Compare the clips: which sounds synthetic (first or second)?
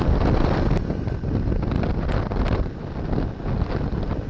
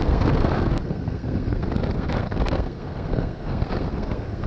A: second